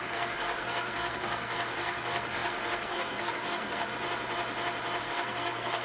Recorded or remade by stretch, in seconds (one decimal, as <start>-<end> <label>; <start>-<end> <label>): 0.0-3.9 remade; 3.9-5.0 recorded; 5.0-5.8 remade